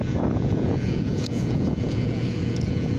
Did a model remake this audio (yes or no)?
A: yes